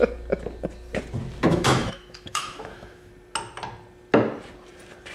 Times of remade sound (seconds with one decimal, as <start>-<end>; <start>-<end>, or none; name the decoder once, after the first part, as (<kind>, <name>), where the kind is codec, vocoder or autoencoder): 1.5-3.1 (autoencoder, DAC-VAE)

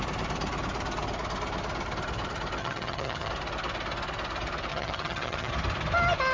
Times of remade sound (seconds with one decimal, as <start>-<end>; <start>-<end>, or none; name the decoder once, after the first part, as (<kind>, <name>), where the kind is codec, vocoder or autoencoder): 2.6-3.3 (vocoder, HiFi-GAN); 4.7-5.5

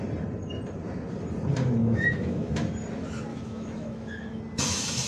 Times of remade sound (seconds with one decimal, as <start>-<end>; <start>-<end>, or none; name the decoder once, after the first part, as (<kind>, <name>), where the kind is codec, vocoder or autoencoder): 1.8-2.5 (autoencoder, DAC-VAE); 3.3-4.4